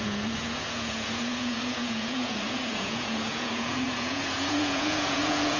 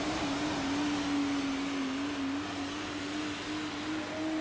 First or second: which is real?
second